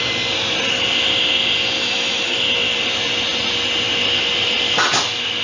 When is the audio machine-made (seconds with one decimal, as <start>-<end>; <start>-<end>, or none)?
1.8-2.5